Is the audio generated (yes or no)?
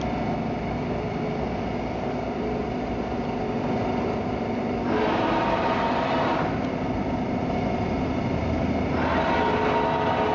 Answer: no